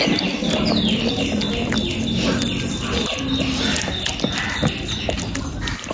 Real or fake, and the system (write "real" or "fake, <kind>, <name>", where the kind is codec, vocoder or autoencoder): real